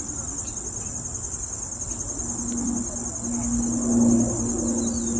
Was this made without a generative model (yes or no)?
yes